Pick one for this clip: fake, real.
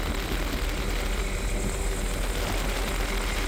real